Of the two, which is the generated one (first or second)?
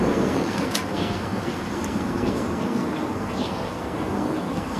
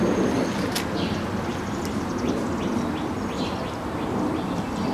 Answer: first